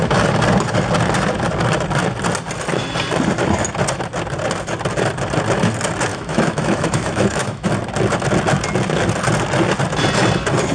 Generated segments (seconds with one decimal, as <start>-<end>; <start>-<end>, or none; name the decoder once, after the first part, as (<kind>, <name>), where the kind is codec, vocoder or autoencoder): 6.1-7.7 (autoencoder, DAC-VAE)